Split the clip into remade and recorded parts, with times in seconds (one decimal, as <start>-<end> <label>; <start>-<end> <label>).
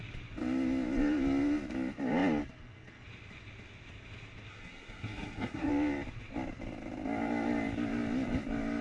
0.0-4.5 recorded; 4.5-5.7 remade; 5.7-8.8 recorded